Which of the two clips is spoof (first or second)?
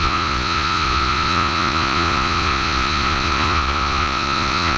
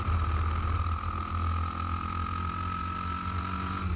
first